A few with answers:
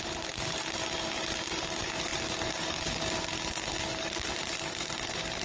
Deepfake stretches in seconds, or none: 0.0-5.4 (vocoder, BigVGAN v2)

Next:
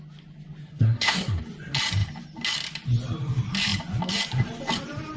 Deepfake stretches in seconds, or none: 0.6-1.4 (codec, SNAC)

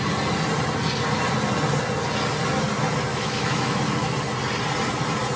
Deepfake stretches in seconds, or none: 3.1-3.8 (autoencoder, DAC-VAE)

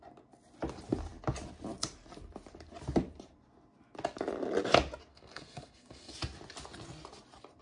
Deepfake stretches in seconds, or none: 5.1-6.1 (codec, SNAC)

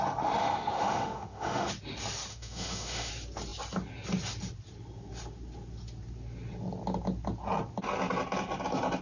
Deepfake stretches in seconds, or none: 0.4-1.7 (autoencoder, DAC-VAE); 2.3-3.1

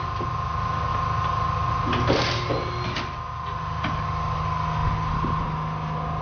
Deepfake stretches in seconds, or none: none